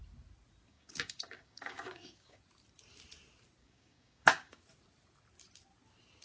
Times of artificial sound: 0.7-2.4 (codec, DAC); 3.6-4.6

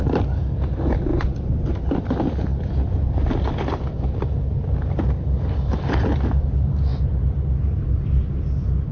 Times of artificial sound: none

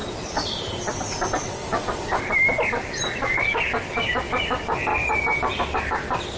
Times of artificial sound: 1.6-2.3 (codec, DAC); 3.2-3.7

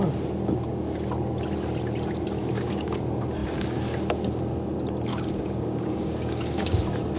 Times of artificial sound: 2.4-3.0 (codec, DAC); 5.1-6.8

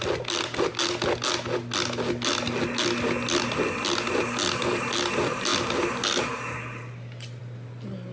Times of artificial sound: none

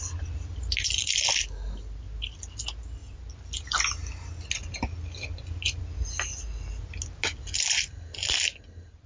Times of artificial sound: none